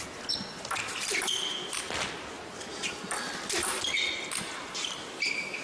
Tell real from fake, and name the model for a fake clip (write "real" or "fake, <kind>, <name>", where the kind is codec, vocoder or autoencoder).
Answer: real